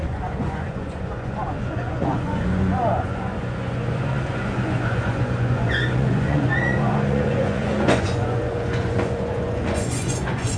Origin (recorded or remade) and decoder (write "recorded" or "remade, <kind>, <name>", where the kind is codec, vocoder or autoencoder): remade, vocoder, Vocos